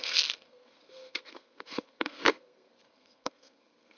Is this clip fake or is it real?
fake